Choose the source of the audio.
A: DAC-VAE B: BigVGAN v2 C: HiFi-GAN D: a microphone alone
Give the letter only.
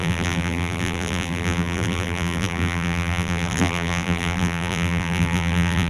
B